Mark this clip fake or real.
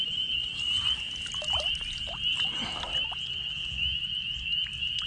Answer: real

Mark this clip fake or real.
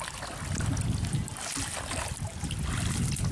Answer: real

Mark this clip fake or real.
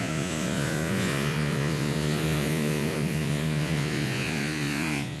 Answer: fake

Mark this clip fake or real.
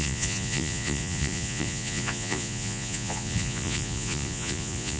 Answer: fake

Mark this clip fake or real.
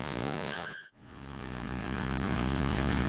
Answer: fake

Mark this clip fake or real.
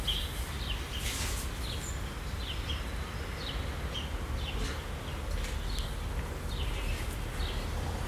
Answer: real